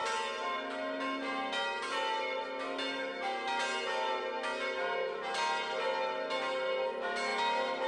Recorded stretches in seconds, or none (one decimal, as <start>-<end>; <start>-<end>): 0.0-7.9